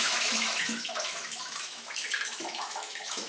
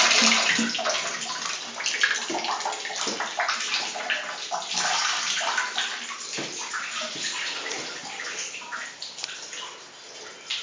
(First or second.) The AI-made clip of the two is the first